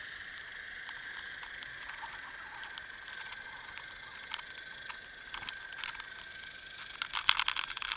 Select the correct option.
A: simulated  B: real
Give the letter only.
B